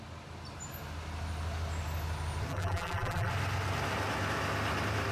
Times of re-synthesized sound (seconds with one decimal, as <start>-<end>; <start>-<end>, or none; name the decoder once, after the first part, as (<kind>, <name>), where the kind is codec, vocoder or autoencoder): 2.5-3.3 (vocoder, BigVGAN v2)